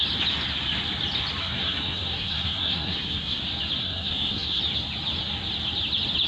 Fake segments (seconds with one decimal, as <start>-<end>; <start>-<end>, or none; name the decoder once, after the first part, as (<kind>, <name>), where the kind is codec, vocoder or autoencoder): 1.4-3.4 (codec, SNAC); 3.8-4.6